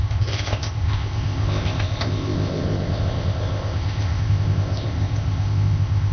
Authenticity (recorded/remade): remade